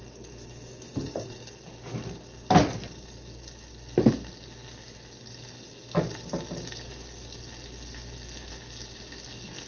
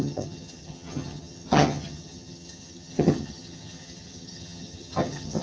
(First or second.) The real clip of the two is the first